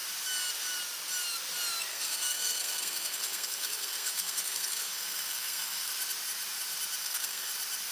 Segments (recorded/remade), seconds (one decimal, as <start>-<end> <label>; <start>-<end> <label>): 0.0-1.9 recorded; 1.9-5.9 remade; 5.9-7.0 recorded; 7.0-7.5 remade; 7.5-7.9 recorded